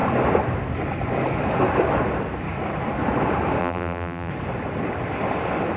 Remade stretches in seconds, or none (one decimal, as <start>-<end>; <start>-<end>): 3.6-4.3